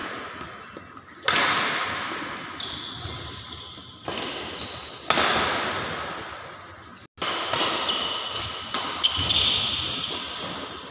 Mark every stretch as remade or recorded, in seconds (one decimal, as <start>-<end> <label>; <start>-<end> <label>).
0.0-10.9 recorded